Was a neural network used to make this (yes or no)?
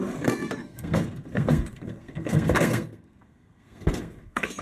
yes